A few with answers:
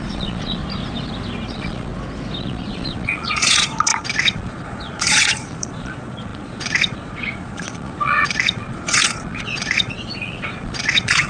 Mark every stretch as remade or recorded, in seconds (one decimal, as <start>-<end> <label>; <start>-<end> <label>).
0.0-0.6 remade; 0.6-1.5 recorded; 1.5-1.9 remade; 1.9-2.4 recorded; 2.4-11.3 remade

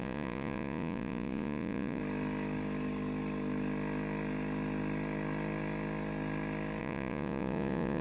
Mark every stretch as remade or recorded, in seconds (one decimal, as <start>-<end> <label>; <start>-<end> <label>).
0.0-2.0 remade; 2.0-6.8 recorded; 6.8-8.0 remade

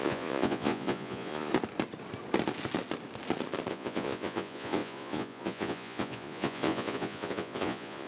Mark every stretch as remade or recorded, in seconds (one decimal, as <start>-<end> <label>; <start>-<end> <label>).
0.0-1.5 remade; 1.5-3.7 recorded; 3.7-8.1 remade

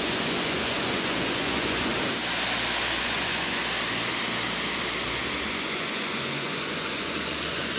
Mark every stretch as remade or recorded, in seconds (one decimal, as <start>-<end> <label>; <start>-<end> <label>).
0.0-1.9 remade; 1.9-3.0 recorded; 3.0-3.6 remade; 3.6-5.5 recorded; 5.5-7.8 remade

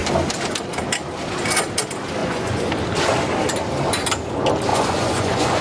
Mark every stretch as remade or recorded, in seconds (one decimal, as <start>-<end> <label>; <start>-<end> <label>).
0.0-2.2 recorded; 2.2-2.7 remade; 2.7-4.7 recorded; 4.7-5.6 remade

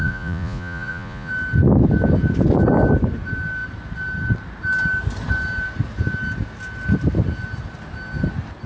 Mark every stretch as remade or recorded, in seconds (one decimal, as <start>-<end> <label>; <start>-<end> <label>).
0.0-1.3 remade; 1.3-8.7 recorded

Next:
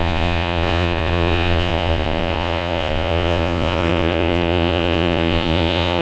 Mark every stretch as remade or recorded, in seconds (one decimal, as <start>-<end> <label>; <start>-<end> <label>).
0.0-6.0 remade